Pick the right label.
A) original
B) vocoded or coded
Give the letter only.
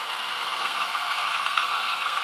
B